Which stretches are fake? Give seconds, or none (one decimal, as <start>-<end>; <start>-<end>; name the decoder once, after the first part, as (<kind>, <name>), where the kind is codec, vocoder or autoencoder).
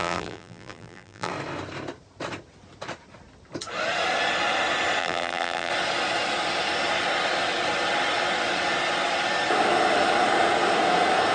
0.0-1.3 (vocoder, BigVGAN v2); 5.0-5.7